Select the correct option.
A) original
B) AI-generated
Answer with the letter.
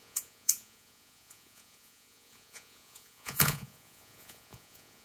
B